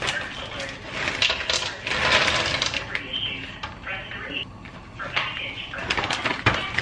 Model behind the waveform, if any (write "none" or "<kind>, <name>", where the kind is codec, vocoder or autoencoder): none